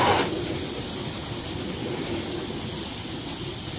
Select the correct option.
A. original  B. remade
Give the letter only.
A